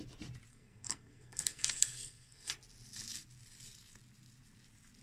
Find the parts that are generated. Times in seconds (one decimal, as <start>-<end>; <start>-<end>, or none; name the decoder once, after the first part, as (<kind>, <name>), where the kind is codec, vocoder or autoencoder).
0.5-2.5 (codec, SNAC)